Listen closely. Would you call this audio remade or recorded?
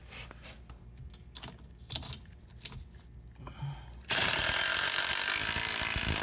recorded